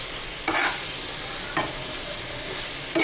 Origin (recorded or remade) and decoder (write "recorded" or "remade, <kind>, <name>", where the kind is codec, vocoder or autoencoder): remade, vocoder, BigVGAN v2